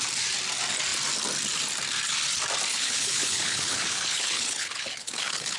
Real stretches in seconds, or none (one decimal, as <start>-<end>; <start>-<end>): 0.0-2.7